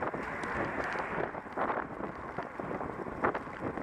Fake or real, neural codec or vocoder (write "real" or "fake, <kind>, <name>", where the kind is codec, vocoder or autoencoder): fake, vocoder, BigVGAN v2